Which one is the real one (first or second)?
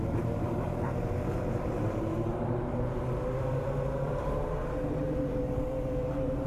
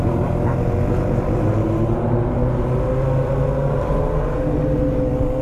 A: second